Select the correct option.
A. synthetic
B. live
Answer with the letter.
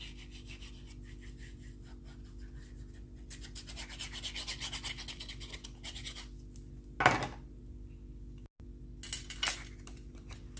B